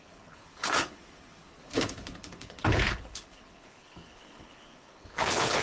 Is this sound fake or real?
fake